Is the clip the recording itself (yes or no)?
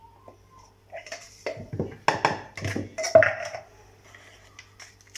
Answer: yes